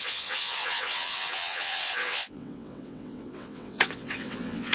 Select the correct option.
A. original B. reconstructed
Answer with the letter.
B